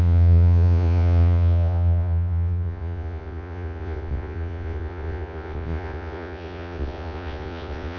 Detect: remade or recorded remade